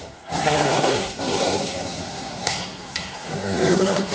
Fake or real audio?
fake